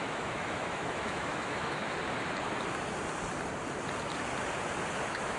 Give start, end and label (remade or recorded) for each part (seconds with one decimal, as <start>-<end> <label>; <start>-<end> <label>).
0.0-1.8 remade; 1.8-5.0 recorded; 5.0-5.4 remade

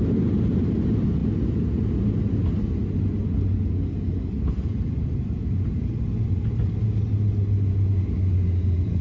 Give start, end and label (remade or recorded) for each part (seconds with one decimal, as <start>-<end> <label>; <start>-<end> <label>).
0.0-9.0 recorded

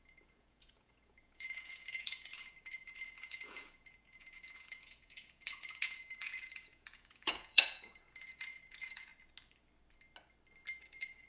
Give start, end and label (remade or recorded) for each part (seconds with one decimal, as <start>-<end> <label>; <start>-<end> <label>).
0.0-9.1 remade; 9.1-10.8 recorded; 10.8-11.3 remade